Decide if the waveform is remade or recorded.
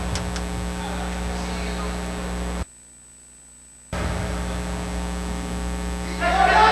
recorded